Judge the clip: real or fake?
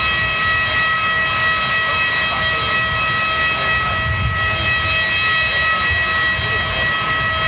real